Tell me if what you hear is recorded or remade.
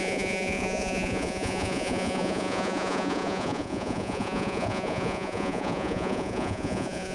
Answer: remade